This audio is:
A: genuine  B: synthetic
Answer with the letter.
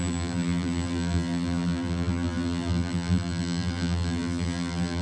B